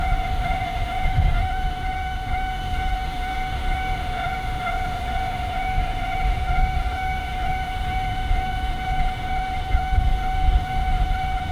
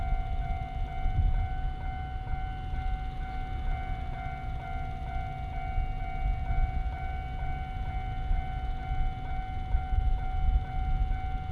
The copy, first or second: first